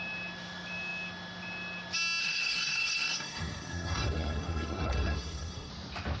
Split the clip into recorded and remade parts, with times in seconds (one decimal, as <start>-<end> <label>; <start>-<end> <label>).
0.0-2.2 recorded; 2.2-5.7 remade; 5.7-6.2 recorded

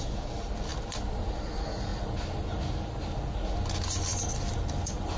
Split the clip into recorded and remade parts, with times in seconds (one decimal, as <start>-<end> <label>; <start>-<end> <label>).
0.0-4.1 recorded; 4.1-5.2 remade

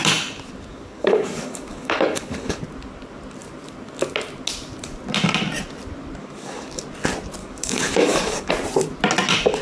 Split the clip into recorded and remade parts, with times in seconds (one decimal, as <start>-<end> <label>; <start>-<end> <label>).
0.0-0.7 recorded; 0.7-2.6 remade; 2.6-6.2 recorded; 6.2-6.8 remade; 6.8-7.4 recorded; 7.4-8.5 remade; 8.5-9.6 recorded

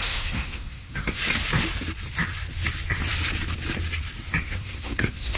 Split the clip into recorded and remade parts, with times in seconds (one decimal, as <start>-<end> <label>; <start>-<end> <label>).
0.0-1.2 remade; 1.2-4.4 recorded; 4.4-5.4 remade

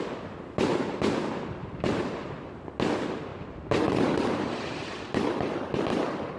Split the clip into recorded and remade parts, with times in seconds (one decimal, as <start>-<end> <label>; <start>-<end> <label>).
0.0-0.7 recorded; 0.7-2.7 remade; 2.7-3.3 recorded; 3.3-5.0 remade; 5.0-6.4 recorded

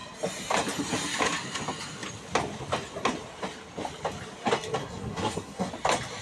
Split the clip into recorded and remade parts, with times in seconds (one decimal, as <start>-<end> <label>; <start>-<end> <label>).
0.0-4.8 recorded; 4.8-5.7 remade; 5.7-6.2 recorded

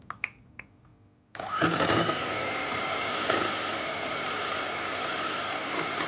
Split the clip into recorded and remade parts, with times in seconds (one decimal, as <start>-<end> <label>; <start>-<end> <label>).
0.0-6.1 recorded